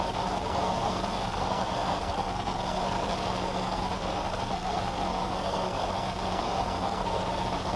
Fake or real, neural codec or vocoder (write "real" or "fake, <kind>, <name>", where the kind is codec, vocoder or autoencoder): fake, codec, SNAC